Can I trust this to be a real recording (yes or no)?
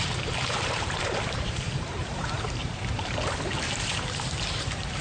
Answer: no